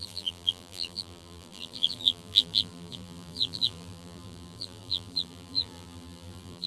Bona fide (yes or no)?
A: no